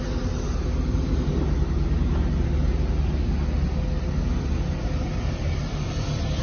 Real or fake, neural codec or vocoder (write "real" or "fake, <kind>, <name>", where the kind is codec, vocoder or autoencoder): real